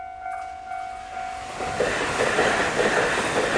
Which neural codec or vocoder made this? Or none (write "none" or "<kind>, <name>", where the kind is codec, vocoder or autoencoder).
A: none